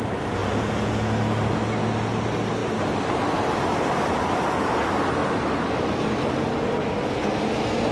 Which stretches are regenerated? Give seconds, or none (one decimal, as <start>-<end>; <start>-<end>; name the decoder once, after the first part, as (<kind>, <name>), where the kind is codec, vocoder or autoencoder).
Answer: 0.4-0.9 (vocoder, Vocos)